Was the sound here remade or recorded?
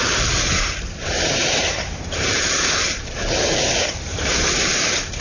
remade